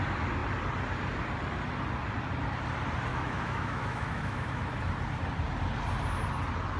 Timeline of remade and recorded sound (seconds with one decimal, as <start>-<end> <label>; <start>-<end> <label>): 0.0-3.1 recorded; 3.1-4.8 remade; 4.8-6.8 recorded